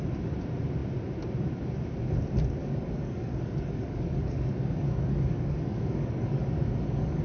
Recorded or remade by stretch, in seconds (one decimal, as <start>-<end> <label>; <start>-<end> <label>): 0.0-2.6 recorded; 2.6-7.2 remade